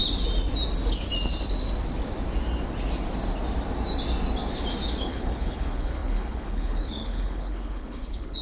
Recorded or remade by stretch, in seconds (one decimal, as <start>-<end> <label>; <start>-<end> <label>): 0.0-5.0 recorded; 5.0-8.4 remade